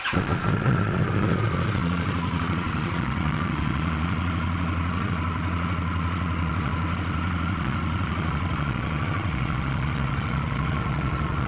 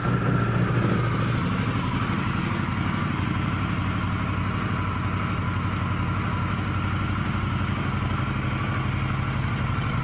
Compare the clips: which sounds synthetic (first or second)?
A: first